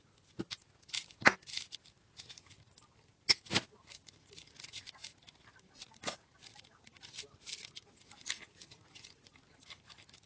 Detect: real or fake real